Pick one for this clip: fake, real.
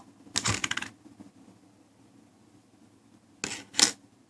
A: real